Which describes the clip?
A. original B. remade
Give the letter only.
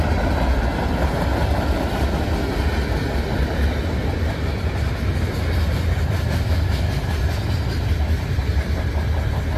A